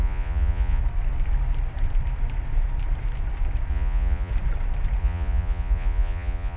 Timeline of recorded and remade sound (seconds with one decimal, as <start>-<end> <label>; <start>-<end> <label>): 0.0-0.8 remade; 0.8-3.7 recorded; 3.7-4.3 remade; 4.3-5.0 recorded; 5.0-6.6 remade